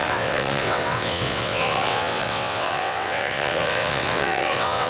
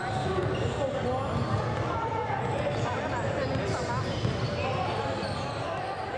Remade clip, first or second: first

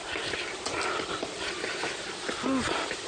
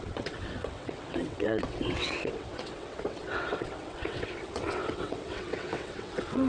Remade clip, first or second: second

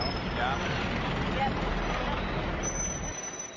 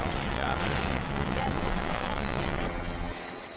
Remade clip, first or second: second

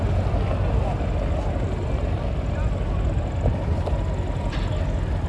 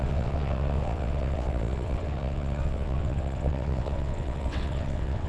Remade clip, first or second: second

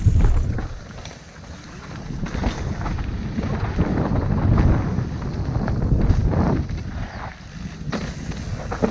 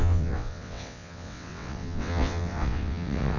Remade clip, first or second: second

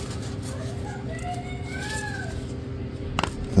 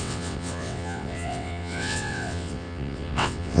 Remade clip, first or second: second